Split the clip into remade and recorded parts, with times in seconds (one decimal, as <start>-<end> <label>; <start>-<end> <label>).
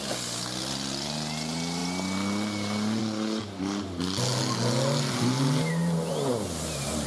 0.0-7.1 recorded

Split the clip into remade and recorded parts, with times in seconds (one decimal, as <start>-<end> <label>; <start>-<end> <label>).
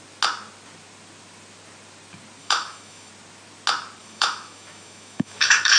0.0-2.4 recorded; 2.4-3.1 remade; 3.1-4.0 recorded; 4.0-5.8 remade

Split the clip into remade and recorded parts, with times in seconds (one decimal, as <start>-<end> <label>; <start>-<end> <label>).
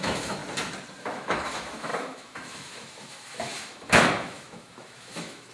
0.0-0.4 remade; 0.4-1.0 recorded; 1.0-5.5 remade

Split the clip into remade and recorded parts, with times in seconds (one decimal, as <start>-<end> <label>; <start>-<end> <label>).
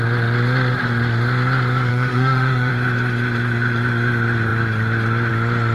0.0-1.9 recorded; 1.9-2.7 remade; 2.7-5.7 recorded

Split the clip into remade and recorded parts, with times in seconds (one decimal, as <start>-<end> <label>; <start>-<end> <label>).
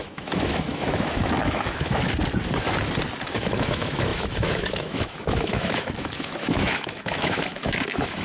0.0-2.1 remade; 2.1-3.3 recorded; 3.3-8.2 remade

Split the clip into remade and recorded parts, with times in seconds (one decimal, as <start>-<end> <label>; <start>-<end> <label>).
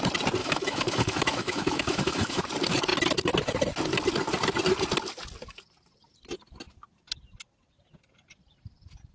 0.0-0.4 recorded; 0.4-2.4 remade; 2.4-9.1 recorded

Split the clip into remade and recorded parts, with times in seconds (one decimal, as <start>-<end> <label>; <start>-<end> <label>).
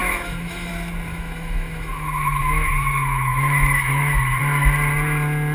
0.0-0.7 remade; 0.7-1.1 recorded; 1.1-4.4 remade; 4.4-5.5 recorded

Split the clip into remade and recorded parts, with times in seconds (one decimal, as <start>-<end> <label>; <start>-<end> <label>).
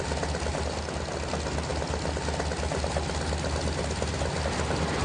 0.0-5.0 recorded